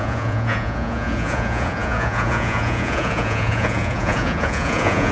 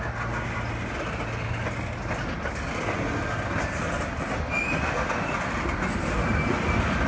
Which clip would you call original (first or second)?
second